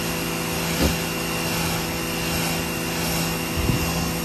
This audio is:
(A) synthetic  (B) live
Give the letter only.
B